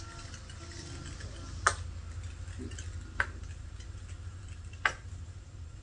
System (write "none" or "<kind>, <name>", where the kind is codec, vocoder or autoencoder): none